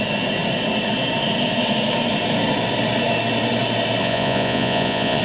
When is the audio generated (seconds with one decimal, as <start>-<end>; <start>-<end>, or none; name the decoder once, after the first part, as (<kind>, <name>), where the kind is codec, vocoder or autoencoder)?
4.0-5.2 (vocoder, Vocos)